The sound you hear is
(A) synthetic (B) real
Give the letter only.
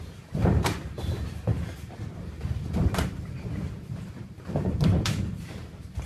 A